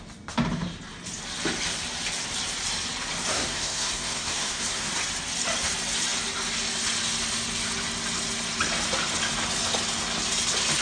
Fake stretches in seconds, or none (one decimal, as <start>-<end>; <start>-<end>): 3.3-4.9